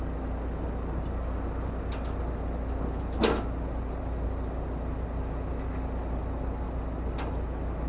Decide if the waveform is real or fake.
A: real